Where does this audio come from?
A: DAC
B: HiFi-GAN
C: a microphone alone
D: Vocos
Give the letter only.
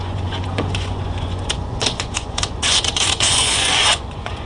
D